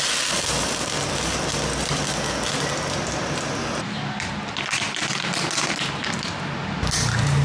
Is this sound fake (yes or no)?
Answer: no